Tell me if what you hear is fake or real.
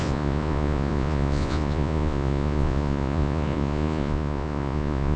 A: fake